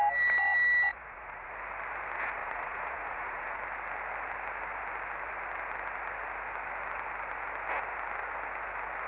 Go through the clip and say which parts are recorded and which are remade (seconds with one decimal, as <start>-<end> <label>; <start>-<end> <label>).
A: 0.0-0.9 recorded; 0.9-1.5 remade; 1.5-2.4 recorded; 2.4-3.6 remade; 3.6-9.1 recorded